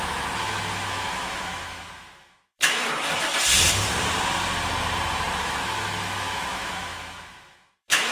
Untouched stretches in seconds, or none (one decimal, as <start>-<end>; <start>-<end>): 2.8-5.4